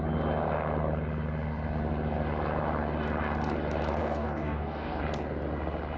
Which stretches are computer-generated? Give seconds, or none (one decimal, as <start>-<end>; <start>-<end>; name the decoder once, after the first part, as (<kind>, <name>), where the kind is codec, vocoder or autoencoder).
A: 4.0-5.0 (codec, DAC)